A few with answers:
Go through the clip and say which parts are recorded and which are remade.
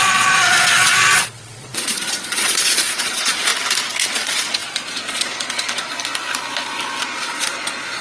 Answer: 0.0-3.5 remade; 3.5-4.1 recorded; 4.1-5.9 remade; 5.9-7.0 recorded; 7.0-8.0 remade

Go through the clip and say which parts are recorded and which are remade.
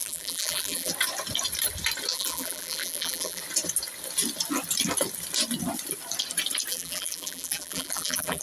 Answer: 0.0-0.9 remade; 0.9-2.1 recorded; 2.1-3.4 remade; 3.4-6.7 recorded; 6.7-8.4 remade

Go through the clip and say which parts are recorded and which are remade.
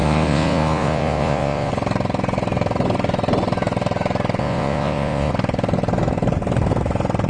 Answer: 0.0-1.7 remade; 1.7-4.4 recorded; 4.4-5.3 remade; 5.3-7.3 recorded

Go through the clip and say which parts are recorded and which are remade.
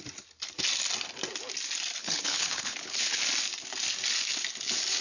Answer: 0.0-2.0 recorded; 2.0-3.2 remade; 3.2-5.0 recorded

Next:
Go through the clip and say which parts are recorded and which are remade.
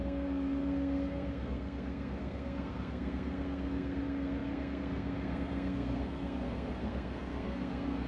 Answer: 0.0-8.1 remade